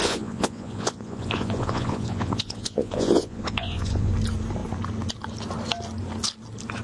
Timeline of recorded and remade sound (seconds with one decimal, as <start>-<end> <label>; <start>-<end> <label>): 0.0-4.1 remade; 4.1-6.8 recorded